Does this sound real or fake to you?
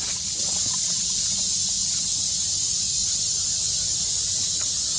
real